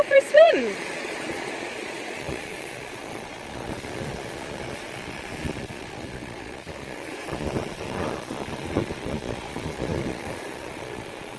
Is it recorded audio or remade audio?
remade